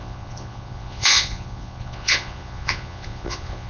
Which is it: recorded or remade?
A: remade